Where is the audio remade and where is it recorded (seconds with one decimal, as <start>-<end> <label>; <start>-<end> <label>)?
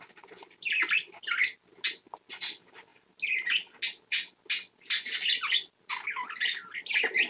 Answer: 0.0-7.3 recorded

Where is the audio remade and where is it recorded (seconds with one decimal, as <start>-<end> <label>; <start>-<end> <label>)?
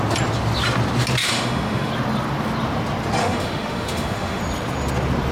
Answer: 0.0-1.2 recorded; 1.2-1.9 remade; 1.9-3.2 recorded; 3.2-4.4 remade; 4.4-5.3 recorded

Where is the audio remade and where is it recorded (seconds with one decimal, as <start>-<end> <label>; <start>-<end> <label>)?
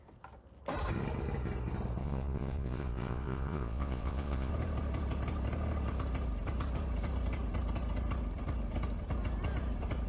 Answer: 0.0-2.0 recorded; 2.0-4.5 remade; 4.5-10.1 recorded